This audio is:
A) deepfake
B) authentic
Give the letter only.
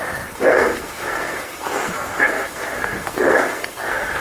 A